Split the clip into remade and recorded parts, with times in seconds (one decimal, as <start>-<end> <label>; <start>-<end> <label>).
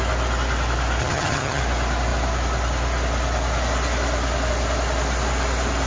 0.0-1.0 recorded; 1.0-1.6 remade; 1.6-5.9 recorded